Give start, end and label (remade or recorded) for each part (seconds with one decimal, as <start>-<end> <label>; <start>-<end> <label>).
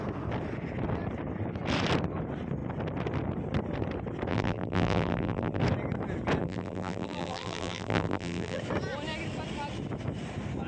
0.0-4.3 recorded; 4.3-5.6 remade; 5.6-6.4 recorded; 6.4-8.6 remade; 8.6-10.7 recorded